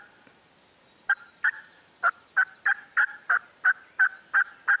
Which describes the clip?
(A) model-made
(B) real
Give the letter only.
B